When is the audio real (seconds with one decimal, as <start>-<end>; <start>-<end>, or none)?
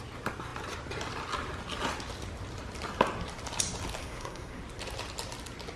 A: 0.0-4.0; 4.6-5.8